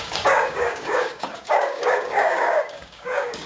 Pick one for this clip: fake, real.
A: fake